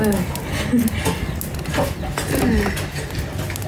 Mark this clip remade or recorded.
recorded